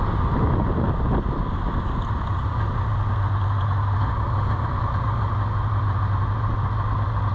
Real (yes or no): yes